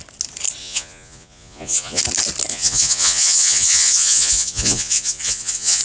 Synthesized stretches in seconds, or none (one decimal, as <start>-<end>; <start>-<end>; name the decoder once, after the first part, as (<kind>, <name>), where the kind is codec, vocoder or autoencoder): 0.6-2.0 (vocoder, Vocos); 2.5-5.8